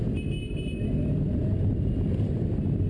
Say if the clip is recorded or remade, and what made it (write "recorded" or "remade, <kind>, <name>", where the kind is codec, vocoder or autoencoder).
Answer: recorded